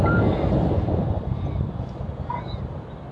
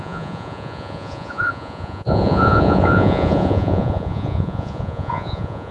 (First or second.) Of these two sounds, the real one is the first